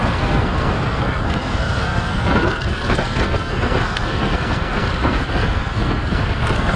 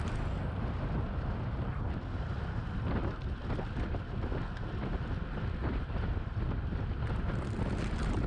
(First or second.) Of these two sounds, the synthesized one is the first